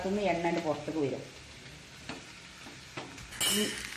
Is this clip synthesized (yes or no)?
no